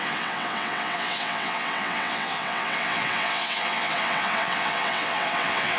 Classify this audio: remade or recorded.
remade